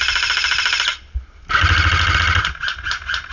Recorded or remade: recorded